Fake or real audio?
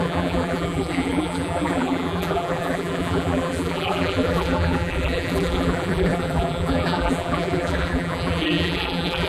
fake